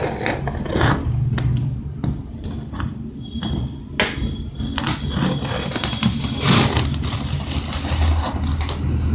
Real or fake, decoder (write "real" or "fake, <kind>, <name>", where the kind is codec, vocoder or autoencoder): real